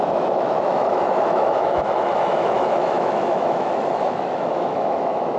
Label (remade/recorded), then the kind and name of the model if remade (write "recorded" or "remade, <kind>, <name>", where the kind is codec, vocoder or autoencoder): remade, autoencoder, DAC-VAE